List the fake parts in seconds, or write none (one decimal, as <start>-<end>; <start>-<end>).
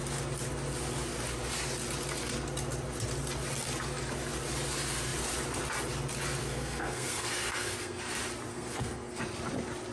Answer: 6.4-8.0; 8.5-9.2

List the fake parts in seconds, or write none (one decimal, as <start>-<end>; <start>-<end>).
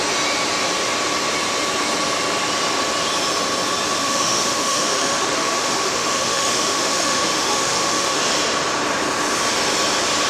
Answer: 4.0-8.2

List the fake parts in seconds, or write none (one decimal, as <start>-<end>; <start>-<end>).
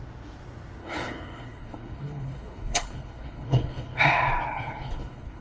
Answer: 0.8-4.0; 4.5-5.4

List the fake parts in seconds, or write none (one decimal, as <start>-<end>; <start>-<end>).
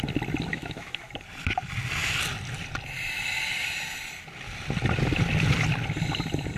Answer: 0.5-1.1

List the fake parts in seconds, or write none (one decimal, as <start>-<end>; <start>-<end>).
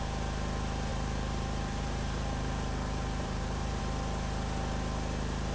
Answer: 0.9-3.8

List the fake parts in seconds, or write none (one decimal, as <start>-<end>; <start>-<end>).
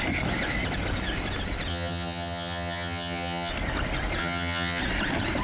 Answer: 1.7-3.5; 4.2-4.8